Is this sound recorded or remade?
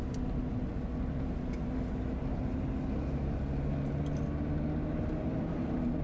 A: recorded